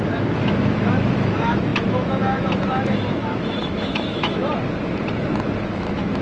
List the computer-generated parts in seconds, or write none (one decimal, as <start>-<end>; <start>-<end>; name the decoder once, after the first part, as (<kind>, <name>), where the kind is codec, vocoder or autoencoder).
0.0-4.4 (autoencoder, DAC-VAE); 5.6-6.2